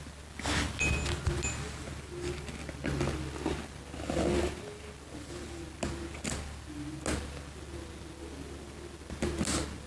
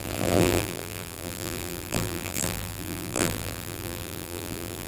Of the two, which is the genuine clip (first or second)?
first